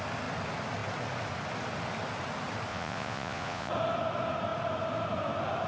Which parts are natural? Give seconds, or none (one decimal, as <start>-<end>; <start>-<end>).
0.0-2.7; 3.7-5.7